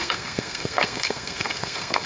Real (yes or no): no